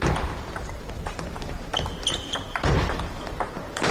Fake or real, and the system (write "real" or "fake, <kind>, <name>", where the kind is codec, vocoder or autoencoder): fake, vocoder, BigVGAN v2